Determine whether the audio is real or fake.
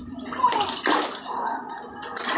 real